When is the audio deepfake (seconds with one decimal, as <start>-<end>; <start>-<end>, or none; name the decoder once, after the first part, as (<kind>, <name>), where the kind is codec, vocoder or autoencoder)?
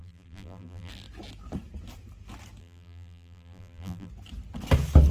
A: 0.0-0.9 (vocoder, BigVGAN v2); 2.6-4.1